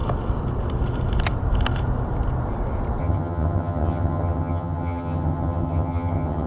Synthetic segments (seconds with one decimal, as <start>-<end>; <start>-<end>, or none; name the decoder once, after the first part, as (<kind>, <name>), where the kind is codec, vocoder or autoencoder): 3.0-6.5 (vocoder, HiFi-GAN)